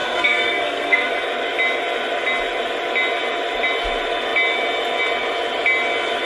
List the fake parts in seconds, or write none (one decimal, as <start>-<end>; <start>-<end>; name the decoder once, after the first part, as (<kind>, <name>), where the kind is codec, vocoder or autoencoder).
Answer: 0.0-1.1 (codec, SNAC)